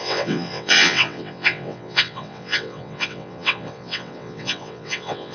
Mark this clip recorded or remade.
remade